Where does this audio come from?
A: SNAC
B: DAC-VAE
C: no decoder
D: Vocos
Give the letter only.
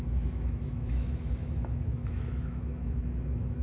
B